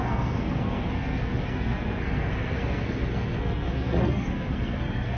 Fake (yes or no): yes